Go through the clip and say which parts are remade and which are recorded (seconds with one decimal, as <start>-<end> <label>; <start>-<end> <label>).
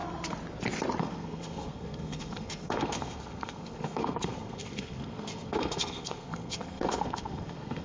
0.0-1.0 recorded; 1.0-7.8 remade